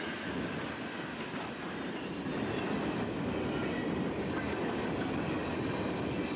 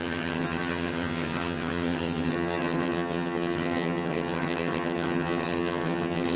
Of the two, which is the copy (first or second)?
second